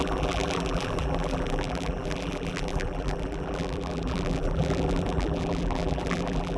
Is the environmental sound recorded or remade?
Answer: remade